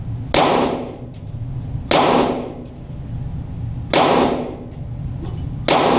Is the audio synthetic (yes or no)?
no